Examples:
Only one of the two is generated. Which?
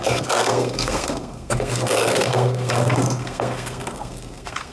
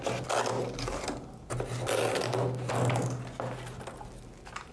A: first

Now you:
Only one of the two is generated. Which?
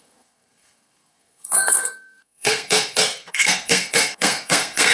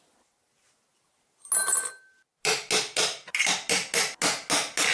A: first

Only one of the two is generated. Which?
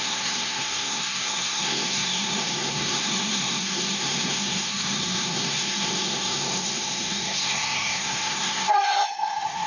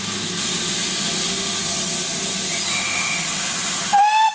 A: first